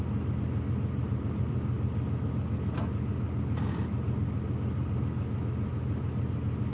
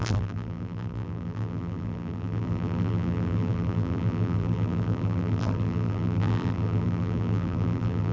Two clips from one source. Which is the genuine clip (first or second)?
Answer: first